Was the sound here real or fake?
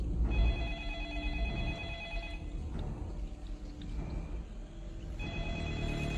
real